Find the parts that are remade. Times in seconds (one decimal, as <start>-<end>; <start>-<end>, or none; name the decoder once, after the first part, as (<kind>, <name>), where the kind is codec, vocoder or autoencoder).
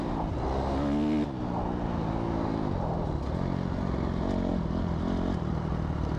4.5-5.7 (vocoder, BigVGAN v2)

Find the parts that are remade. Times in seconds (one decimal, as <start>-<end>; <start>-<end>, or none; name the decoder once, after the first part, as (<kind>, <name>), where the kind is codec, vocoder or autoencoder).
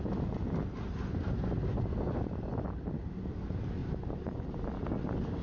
3.8-4.4 (vocoder, BigVGAN v2)